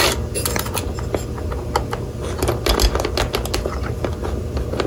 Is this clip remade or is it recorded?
recorded